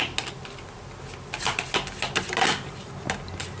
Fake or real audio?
real